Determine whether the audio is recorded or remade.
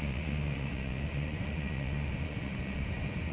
remade